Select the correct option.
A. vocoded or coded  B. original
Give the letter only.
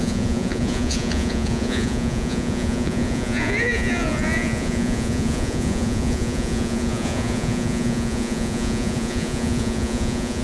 A